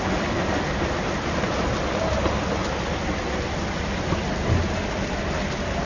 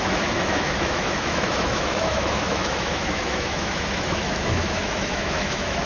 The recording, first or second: first